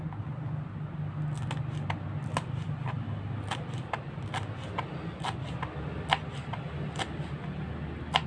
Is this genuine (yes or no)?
yes